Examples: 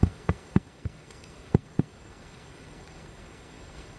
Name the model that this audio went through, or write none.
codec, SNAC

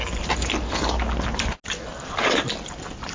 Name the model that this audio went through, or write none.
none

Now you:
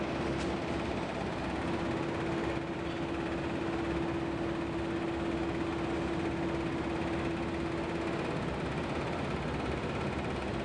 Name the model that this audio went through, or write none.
none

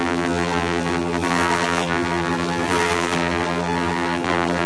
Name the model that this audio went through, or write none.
vocoder, BigVGAN v2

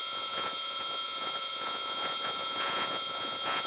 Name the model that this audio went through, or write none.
vocoder, Vocos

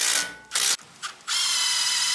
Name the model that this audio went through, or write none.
none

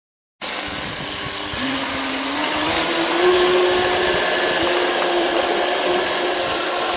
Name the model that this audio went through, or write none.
none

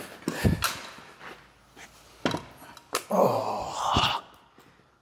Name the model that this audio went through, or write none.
none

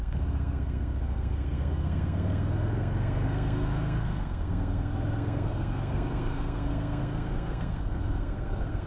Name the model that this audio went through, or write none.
codec, SNAC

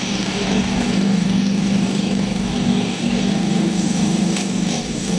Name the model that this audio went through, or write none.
codec, DAC